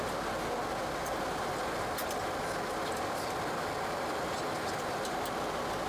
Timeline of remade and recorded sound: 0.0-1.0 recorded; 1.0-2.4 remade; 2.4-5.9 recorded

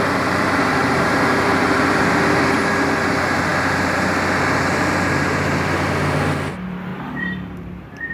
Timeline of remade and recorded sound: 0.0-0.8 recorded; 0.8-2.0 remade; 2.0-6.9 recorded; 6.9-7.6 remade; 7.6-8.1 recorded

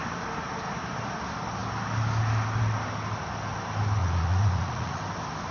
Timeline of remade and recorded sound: 0.0-4.0 recorded; 4.0-5.0 remade; 5.0-5.5 recorded

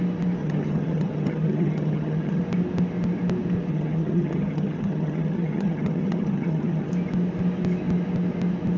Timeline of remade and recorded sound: 0.0-0.4 recorded; 0.4-2.4 remade; 2.4-3.7 recorded; 3.7-6.9 remade; 6.9-8.8 recorded

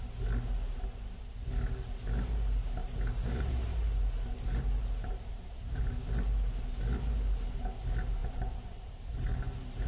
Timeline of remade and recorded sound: 0.0-2.8 recorded; 2.8-5.8 remade; 5.8-8.2 recorded; 8.2-9.9 remade

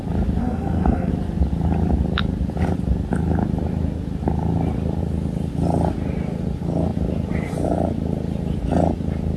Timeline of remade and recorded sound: 0.0-0.4 recorded; 0.4-1.1 remade; 1.1-9.4 recorded